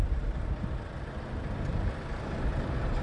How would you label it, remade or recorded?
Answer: remade